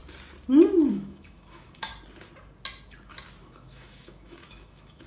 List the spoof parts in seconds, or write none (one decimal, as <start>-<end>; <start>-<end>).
0.9-1.9; 3.4-5.1